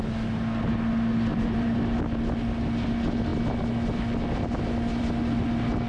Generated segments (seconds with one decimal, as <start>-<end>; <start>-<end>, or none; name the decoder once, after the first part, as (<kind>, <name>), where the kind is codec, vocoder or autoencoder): 1.3-2.0 (vocoder, BigVGAN v2)